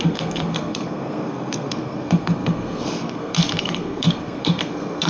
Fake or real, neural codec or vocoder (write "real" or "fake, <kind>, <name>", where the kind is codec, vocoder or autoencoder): fake, codec, SNAC